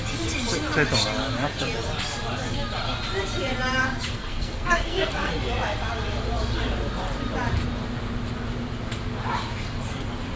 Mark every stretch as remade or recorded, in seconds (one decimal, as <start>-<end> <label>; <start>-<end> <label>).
0.0-4.1 recorded; 4.1-5.3 remade; 5.3-10.4 recorded